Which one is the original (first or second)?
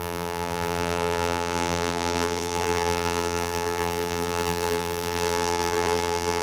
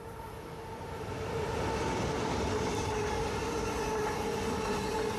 second